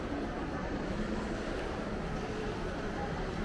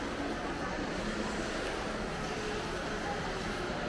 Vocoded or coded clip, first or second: first